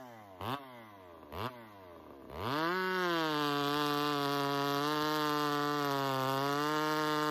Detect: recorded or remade recorded